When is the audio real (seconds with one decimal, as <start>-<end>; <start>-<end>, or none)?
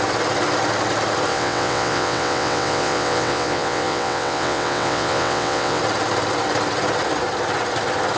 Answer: 0.0-1.3; 5.8-8.2